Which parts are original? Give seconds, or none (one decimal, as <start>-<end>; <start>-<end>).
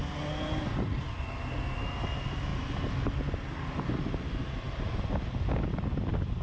0.0-6.4